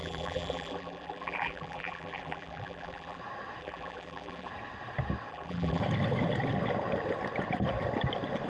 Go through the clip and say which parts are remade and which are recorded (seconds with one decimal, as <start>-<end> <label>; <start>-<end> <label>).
0.0-3.2 remade; 3.2-3.6 recorded; 3.6-4.5 remade; 4.5-5.3 recorded; 5.3-5.8 remade; 5.8-8.5 recorded